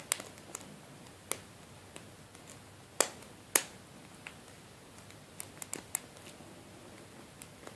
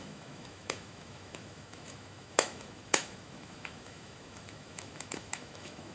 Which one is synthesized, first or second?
second